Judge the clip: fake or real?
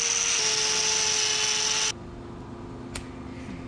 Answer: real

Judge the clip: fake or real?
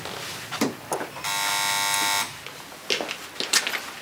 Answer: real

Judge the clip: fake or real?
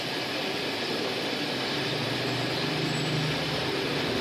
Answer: fake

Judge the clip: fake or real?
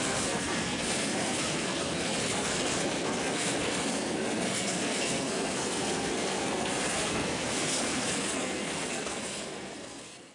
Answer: fake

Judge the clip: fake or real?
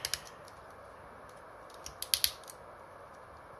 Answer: real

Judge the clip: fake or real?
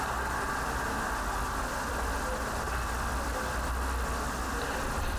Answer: real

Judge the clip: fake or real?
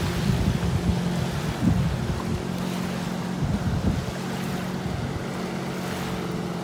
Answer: real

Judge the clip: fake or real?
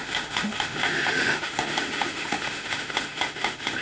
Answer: fake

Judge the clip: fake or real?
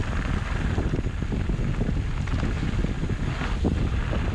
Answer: real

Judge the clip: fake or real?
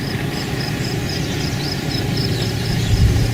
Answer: fake